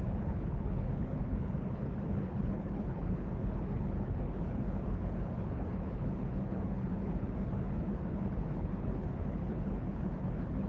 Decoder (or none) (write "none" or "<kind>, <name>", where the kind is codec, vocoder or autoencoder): codec, HILCodec